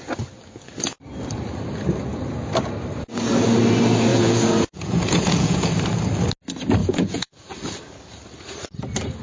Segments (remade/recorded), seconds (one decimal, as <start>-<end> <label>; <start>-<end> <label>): 0.0-4.1 recorded; 4.1-5.7 remade; 5.7-6.8 recorded; 6.8-7.5 remade; 7.5-9.2 recorded